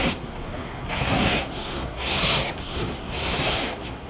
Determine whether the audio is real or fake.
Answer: fake